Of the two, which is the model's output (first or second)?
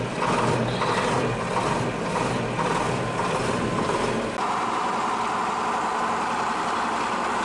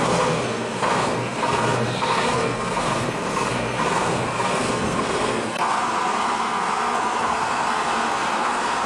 second